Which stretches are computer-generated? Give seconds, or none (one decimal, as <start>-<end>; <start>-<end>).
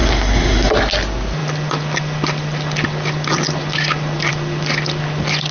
0.0-0.7